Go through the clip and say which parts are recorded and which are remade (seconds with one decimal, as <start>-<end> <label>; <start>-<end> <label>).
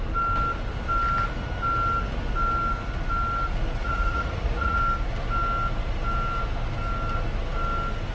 0.0-3.8 recorded; 3.8-4.8 remade; 4.8-8.1 recorded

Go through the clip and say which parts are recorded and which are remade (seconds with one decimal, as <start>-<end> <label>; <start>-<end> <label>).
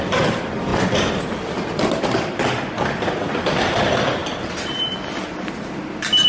0.0-6.3 recorded